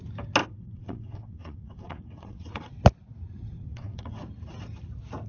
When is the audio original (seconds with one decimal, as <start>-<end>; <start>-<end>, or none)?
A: 0.0-0.4; 2.8-3.4; 4.2-5.3